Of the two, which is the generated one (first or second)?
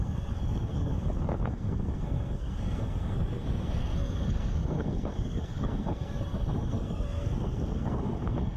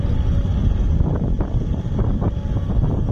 first